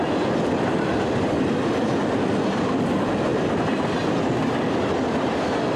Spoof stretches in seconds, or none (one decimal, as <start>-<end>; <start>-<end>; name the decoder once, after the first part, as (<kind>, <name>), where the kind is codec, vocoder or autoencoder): none